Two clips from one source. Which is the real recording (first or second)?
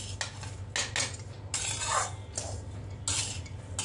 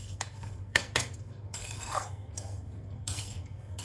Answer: first